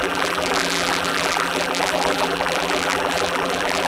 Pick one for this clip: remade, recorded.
remade